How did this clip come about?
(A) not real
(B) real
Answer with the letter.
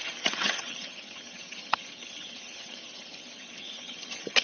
A